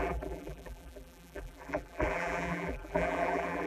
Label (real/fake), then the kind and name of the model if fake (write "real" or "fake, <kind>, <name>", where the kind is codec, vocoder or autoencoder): fake, vocoder, BigVGAN v2